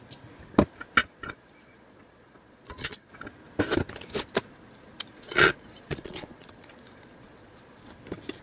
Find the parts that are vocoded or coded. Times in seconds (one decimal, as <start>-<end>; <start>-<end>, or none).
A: 1.0-3.1; 5.1-7.9